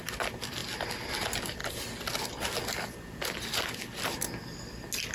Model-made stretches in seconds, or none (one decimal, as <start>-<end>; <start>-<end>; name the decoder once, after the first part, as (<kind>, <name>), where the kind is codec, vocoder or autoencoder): none